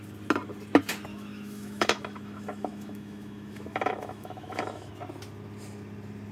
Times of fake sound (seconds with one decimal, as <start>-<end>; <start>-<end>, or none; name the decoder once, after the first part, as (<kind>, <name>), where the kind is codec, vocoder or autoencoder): 1.1-4.9 (autoencoder, DAC-VAE)

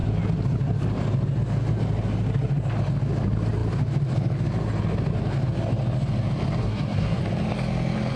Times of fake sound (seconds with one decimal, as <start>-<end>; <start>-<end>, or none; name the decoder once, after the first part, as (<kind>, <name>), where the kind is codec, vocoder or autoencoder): 6.6-7.2 (codec, SNAC)